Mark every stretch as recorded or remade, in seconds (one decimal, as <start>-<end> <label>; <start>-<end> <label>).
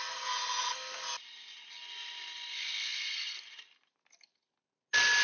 0.0-5.2 recorded